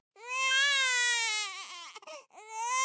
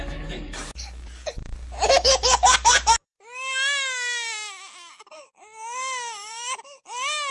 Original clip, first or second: first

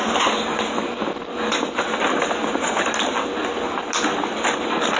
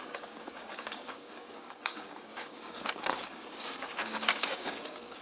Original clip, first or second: first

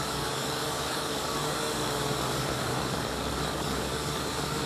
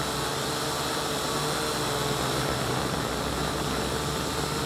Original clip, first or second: second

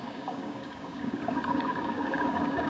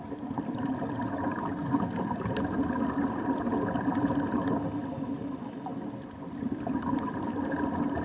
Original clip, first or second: second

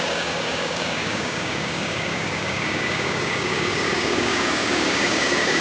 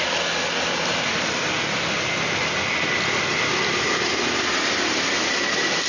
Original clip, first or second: second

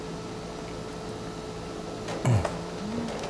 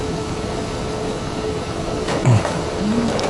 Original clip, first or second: first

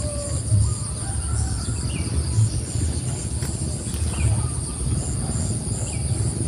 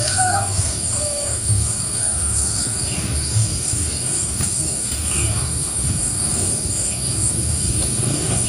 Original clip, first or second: first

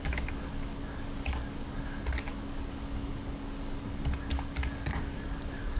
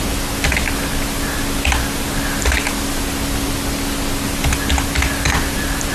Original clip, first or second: second